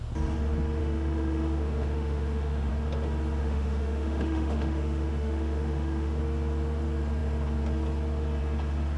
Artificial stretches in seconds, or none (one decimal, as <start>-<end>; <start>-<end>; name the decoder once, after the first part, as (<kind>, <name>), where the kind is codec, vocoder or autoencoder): 0.8-2.7 (autoencoder, DAC-VAE); 3.4-6.2